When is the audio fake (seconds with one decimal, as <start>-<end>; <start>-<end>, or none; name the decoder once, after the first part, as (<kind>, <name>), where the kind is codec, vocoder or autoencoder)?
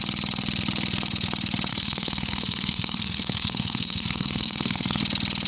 1.7-5.0 (codec, SNAC)